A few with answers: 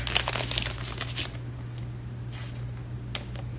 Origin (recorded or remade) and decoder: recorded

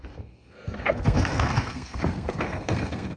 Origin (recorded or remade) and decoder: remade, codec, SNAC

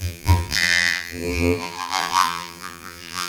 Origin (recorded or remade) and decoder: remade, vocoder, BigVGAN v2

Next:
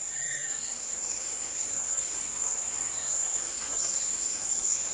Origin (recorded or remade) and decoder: remade, codec, SNAC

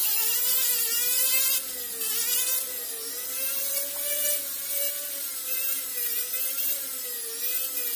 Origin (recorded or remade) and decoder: recorded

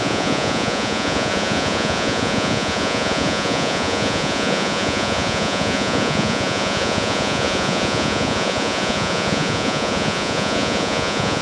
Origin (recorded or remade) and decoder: remade, vocoder, Vocos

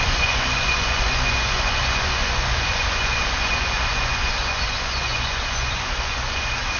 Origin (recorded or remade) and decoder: remade, vocoder, Vocos